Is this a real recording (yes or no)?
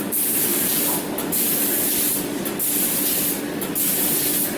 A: yes